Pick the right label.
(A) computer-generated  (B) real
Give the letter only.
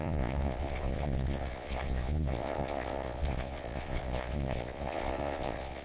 A